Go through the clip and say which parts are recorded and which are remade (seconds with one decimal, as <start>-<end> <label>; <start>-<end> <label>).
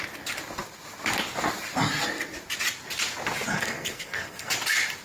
0.0-3.5 recorded; 3.5-4.5 remade; 4.5-5.0 recorded